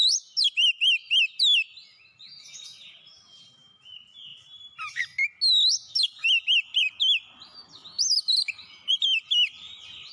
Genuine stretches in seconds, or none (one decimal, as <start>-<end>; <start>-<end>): 0.0-10.1

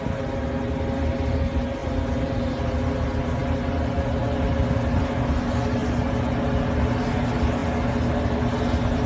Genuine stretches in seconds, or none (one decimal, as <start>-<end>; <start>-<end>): 0.0-9.1

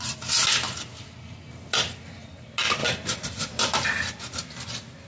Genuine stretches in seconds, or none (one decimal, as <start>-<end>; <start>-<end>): 0.0-2.8; 3.6-5.1

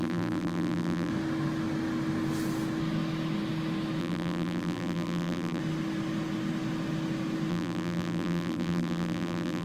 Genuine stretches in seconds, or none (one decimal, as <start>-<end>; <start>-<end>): 1.1-4.0; 5.6-7.5

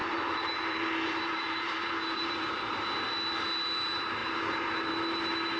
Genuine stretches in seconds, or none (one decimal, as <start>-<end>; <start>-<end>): 2.5-4.2; 4.9-5.6